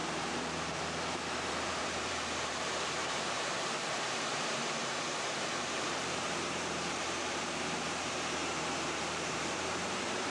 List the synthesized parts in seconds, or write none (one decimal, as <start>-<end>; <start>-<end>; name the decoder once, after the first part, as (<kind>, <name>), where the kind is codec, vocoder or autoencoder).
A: 0.0-10.3 (vocoder, BigVGAN v2)